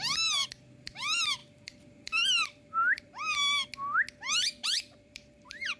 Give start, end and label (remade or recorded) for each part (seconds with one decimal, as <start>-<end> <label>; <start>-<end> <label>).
0.0-3.4 remade; 3.4-4.3 recorded; 4.3-5.8 remade